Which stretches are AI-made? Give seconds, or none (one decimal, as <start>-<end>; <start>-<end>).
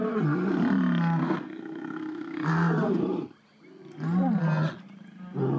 1.2-3.0